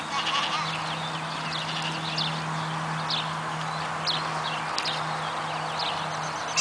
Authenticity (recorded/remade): recorded